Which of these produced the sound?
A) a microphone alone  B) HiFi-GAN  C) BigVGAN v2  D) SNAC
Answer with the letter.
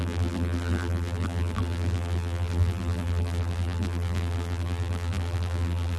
C